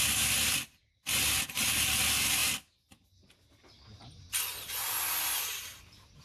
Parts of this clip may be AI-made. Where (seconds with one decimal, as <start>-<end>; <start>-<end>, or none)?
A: 0.0-2.4; 5.6-6.2